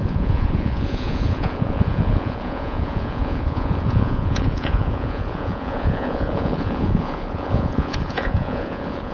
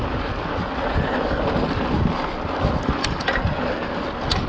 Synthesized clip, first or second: first